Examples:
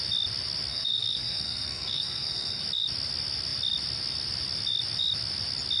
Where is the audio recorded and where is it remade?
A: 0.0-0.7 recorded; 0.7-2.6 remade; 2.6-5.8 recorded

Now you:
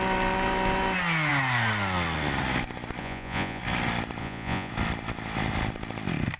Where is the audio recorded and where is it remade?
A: 0.0-3.0 recorded; 3.0-3.6 remade; 3.6-4.2 recorded; 4.2-4.7 remade; 4.7-6.4 recorded

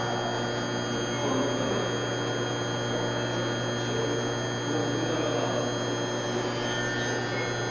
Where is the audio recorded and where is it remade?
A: 0.0-7.7 recorded

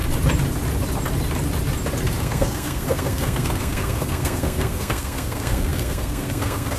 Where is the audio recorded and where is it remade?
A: 0.0-2.2 recorded; 2.2-6.8 remade